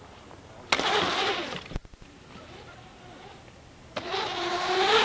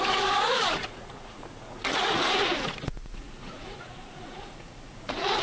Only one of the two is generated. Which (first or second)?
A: second